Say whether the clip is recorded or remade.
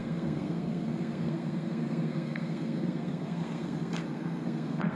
remade